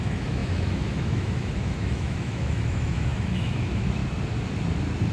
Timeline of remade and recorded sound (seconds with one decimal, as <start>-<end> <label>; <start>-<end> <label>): 0.0-4.0 remade; 4.0-5.1 recorded